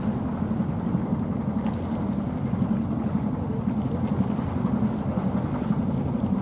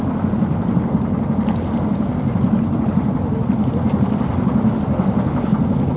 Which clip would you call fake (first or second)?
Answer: second